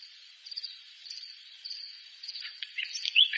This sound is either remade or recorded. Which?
remade